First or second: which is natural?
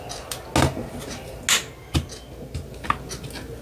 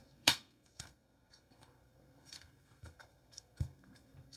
first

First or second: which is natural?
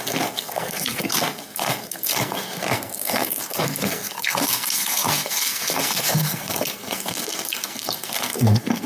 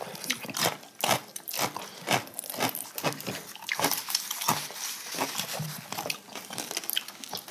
second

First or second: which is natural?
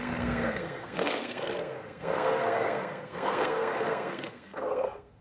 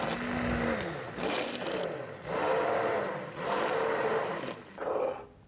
second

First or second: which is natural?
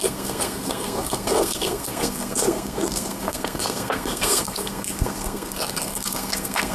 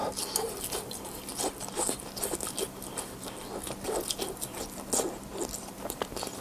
second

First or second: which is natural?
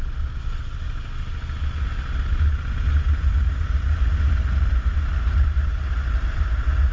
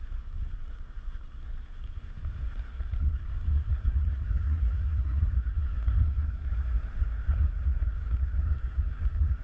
first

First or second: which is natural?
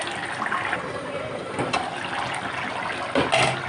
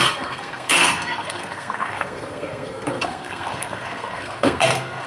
first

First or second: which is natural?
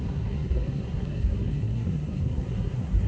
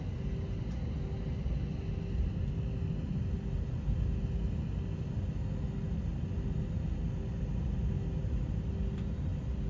second